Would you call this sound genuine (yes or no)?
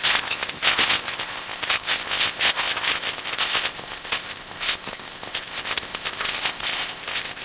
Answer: no